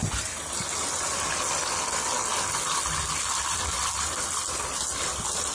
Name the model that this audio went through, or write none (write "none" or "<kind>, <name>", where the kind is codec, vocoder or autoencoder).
none